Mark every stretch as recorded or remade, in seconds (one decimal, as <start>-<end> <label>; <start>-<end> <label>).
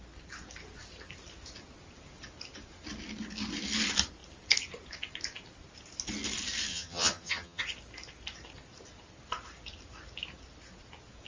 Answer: 0.0-6.7 recorded; 6.7-7.6 remade; 7.6-11.3 recorded